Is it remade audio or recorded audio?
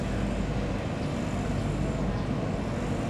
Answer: recorded